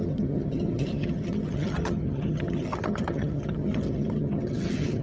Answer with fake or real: fake